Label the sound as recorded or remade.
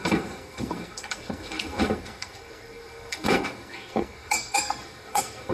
remade